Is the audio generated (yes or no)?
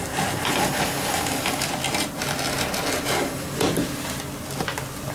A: no